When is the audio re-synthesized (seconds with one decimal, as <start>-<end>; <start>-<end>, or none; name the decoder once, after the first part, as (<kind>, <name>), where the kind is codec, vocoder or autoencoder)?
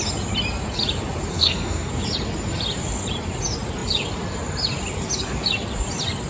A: 1.3-1.9 (codec, SNAC)